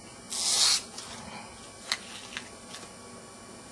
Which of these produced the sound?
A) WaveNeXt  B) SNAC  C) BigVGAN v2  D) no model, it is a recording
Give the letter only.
D